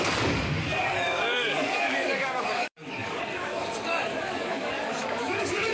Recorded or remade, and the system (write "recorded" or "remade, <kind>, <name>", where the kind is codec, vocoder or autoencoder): remade, codec, DAC